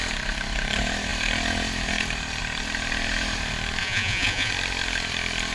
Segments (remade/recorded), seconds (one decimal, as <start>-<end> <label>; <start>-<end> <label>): 0.0-3.8 recorded; 3.8-4.5 remade; 4.5-5.5 recorded